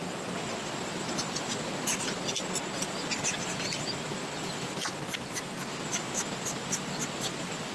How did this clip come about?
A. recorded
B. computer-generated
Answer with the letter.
A